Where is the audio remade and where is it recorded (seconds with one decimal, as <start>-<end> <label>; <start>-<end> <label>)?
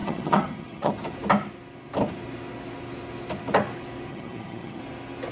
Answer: 0.0-0.9 remade; 0.9-4.1 recorded; 4.1-4.8 remade; 4.8-5.3 recorded